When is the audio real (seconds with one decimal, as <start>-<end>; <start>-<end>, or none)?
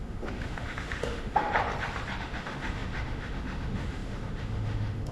1.5-2.2